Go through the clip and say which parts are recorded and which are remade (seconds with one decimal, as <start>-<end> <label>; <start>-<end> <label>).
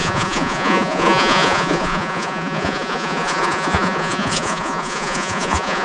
0.0-5.8 remade